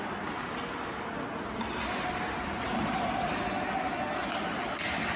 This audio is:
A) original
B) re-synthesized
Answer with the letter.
A